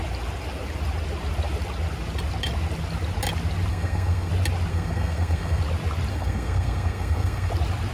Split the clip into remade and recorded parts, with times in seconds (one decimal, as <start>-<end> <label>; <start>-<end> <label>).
0.0-3.7 recorded; 3.7-4.3 remade; 4.3-4.7 recorded; 4.7-5.6 remade; 5.6-6.1 recorded; 6.1-7.5 remade; 7.5-7.9 recorded